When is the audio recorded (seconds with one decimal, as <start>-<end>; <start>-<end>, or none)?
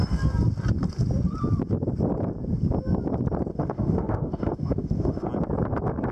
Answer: 0.0-3.5; 5.3-6.1